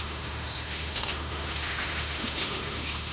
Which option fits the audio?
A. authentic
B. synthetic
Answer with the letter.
B